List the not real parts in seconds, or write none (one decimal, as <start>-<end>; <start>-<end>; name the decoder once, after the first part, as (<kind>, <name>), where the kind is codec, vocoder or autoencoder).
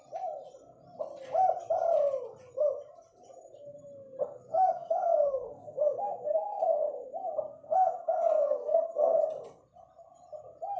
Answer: 4.2-6.7 (codec, SNAC); 7.5-9.2